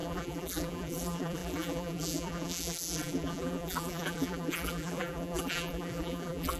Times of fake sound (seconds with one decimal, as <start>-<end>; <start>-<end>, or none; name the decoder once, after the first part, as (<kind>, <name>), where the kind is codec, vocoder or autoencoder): 0.0-6.6 (vocoder, BigVGAN v2)